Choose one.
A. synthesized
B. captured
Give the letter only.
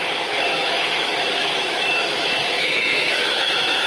A